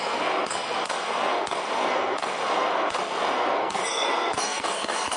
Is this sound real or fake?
fake